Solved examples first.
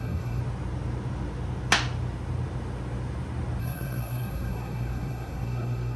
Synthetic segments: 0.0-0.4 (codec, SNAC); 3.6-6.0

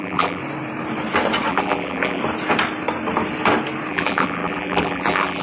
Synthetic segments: 0.0-0.4 (vocoder, BigVGAN v2); 1.5-2.2; 3.9-5.4